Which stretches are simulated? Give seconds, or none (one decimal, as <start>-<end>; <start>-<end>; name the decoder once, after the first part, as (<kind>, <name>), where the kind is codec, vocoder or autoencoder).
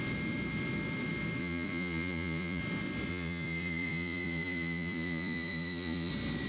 1.4-2.6 (vocoder, Vocos); 3.1-6.1